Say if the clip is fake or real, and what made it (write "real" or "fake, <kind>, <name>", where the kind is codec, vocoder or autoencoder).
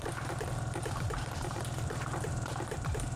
fake, vocoder, BigVGAN v2